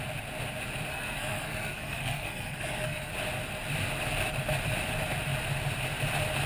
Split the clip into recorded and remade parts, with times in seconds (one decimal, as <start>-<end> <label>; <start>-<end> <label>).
0.0-0.9 recorded; 0.9-3.1 remade; 3.1-6.5 recorded